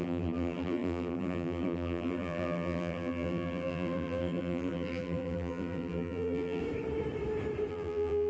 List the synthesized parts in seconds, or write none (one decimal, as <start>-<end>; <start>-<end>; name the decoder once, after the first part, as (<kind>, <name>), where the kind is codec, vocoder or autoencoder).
0.0-6.6 (vocoder, BigVGAN v2); 7.7-8.3